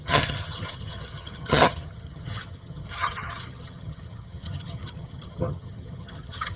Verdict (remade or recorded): remade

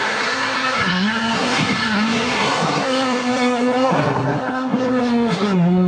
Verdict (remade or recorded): remade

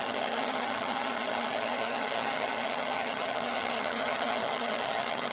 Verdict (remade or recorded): remade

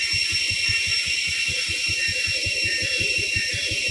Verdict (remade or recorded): recorded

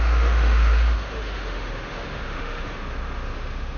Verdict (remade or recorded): remade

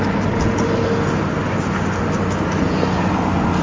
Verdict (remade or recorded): recorded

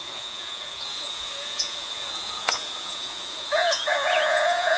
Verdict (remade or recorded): remade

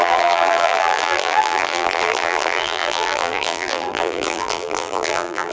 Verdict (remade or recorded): remade